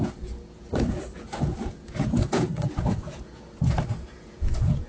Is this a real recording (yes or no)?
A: no